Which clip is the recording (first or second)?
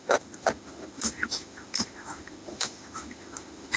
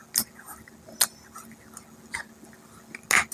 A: second